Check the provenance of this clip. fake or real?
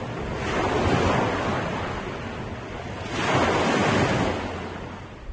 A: real